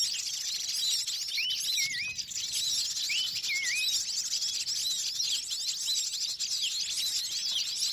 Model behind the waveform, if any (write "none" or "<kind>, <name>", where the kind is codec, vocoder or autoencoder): none